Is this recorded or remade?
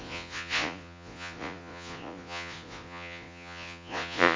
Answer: remade